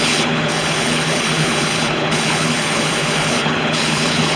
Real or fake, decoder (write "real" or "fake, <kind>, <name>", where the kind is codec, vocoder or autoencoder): fake, codec, HILCodec